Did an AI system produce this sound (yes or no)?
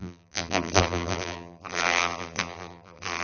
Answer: yes